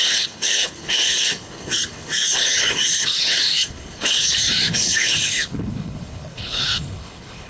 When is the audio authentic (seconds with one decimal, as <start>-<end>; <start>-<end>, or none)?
none